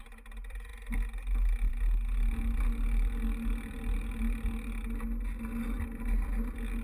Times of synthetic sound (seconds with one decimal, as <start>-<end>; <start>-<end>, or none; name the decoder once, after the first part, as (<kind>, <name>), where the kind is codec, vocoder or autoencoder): none

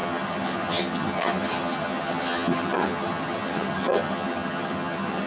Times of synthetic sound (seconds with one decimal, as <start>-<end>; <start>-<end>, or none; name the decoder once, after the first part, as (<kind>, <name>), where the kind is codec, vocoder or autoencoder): 0.0-5.3 (vocoder, HiFi-GAN)

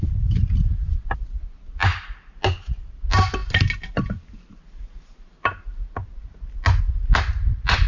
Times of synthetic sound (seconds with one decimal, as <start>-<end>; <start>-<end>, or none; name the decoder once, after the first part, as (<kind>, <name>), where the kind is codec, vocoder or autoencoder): none

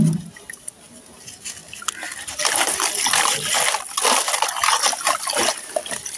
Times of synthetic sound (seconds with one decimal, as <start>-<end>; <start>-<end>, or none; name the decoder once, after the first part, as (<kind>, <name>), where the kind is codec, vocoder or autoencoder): none

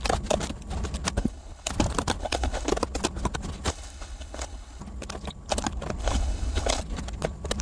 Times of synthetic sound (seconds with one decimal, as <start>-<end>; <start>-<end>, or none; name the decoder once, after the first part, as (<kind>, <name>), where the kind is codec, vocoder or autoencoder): 1.2-1.7 (codec, HILCodec); 2.2-2.7; 3.7-4.8; 6.0-6.8